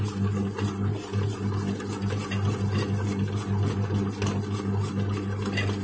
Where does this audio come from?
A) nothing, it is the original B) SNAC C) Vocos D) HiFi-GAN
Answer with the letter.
A